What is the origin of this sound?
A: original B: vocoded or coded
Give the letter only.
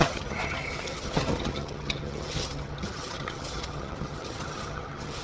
B